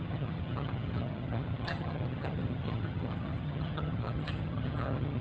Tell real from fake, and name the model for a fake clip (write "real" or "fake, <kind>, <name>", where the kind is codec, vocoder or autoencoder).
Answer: fake, vocoder, HiFi-GAN